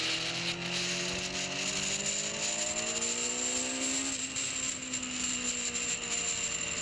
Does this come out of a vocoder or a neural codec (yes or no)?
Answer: no